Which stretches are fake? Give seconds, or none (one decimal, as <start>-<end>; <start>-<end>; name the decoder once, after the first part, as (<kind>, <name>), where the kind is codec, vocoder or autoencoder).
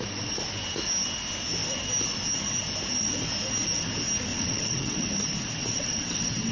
4.3-5.1 (vocoder, WaveNeXt); 5.6-6.5